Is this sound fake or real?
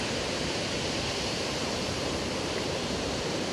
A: fake